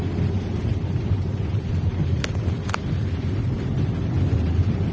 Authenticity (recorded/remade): recorded